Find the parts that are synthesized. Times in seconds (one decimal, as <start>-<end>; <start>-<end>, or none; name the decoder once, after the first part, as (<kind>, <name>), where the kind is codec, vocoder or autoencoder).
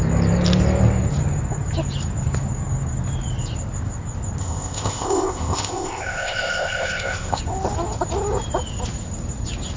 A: 4.4-7.4 (codec, ZipCodec)